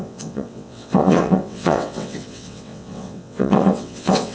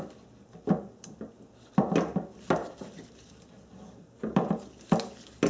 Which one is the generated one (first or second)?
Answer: first